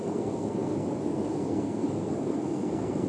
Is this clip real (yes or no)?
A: no